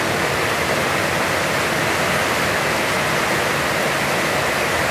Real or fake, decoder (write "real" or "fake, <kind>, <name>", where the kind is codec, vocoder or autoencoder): real